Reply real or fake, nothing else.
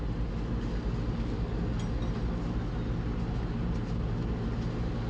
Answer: real